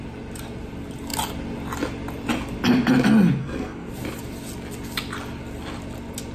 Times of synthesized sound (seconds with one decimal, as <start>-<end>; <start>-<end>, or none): 3.4-3.9